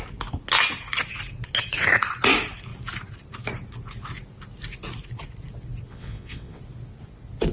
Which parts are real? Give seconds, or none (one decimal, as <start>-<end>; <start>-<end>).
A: 0.0-5.9; 6.6-7.5